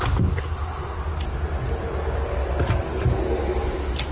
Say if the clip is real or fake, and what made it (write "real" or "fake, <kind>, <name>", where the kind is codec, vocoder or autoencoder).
real